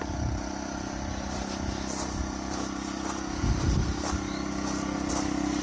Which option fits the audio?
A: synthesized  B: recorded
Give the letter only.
B